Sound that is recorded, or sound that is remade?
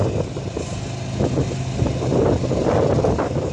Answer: recorded